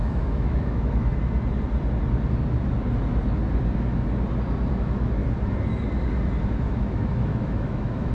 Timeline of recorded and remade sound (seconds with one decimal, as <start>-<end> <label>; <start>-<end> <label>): 0.0-1.1 remade; 1.1-4.7 recorded; 4.7-5.2 remade; 5.2-6.4 recorded; 6.4-8.1 remade